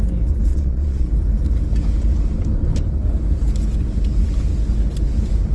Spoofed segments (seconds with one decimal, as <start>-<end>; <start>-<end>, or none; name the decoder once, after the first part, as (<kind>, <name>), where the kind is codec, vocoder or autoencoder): 0.5-1.1 (vocoder, Vocos)